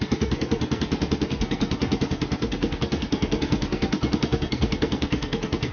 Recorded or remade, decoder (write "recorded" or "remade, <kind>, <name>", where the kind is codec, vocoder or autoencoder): remade, codec, SNAC